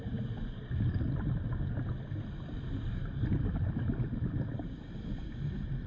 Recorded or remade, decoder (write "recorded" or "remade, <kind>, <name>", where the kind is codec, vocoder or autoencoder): recorded